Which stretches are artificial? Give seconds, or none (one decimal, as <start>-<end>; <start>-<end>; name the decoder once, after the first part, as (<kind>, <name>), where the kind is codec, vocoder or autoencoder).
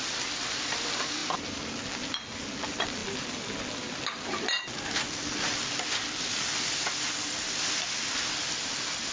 none